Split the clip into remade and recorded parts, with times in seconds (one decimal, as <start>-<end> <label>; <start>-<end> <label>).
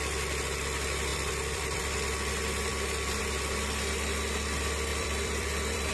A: 0.0-1.1 recorded; 1.1-1.8 remade; 1.8-4.9 recorded; 4.9-5.9 remade